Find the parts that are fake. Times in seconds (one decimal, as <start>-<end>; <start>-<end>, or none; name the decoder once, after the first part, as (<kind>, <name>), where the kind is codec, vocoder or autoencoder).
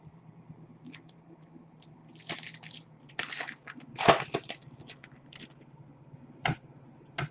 0.0-2.0 (vocoder, BigVGAN v2); 6.4-7.3